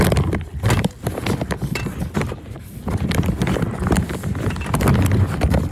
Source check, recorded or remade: recorded